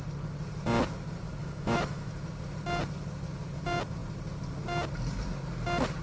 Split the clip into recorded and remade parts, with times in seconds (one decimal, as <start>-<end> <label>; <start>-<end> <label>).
0.0-1.4 recorded; 1.4-2.1 remade; 2.1-6.0 recorded

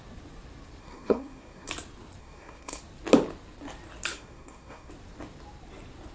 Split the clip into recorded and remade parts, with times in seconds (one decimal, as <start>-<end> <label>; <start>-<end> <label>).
0.0-0.8 recorded; 0.8-1.7 remade; 1.7-2.2 recorded; 2.2-2.8 remade; 2.8-4.1 recorded; 4.1-4.9 remade; 4.9-6.1 recorded

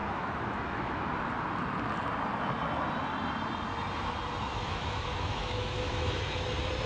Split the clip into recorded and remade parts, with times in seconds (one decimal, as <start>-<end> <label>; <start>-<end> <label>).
0.0-1.1 remade; 1.1-4.5 recorded; 4.5-6.1 remade; 6.1-6.9 recorded

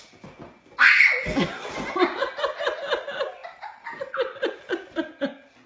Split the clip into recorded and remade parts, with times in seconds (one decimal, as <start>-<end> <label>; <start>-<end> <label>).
0.0-5.7 recorded

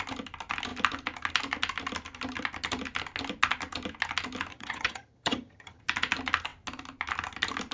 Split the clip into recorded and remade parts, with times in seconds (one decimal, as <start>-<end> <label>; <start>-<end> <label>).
0.0-4.5 recorded; 4.5-5.8 remade; 5.8-7.7 recorded

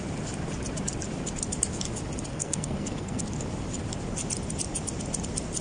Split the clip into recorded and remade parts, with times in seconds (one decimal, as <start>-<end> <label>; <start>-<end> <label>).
0.0-2.3 recorded; 2.3-3.2 remade; 3.2-5.6 recorded